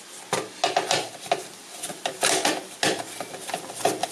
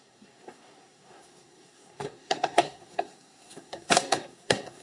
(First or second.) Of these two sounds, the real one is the first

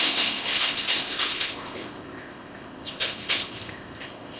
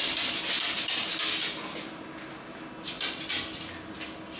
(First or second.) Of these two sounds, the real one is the second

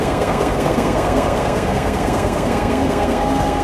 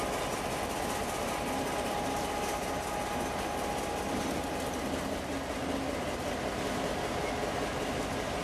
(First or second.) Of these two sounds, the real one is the second